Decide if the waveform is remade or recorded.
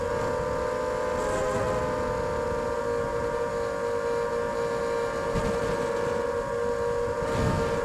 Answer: recorded